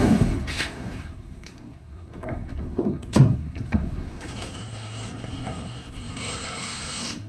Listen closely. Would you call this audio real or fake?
fake